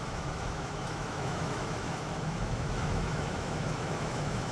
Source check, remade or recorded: remade